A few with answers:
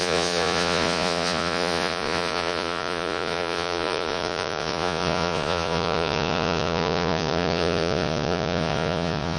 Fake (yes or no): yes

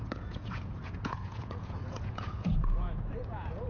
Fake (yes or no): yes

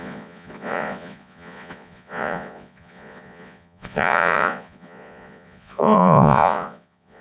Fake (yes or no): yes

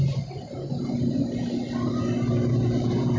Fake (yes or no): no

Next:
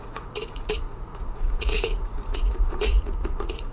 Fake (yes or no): yes